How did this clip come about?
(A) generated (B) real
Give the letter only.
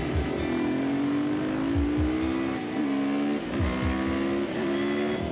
B